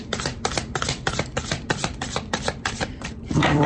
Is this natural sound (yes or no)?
no